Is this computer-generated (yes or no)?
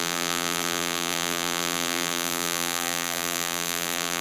yes